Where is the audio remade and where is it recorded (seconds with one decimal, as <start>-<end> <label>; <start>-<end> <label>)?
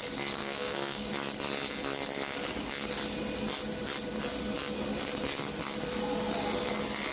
0.0-0.4 recorded; 0.4-1.1 remade; 1.1-7.1 recorded